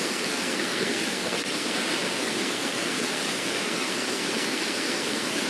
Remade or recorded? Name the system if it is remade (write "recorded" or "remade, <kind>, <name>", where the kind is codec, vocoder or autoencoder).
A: remade, codec, SNAC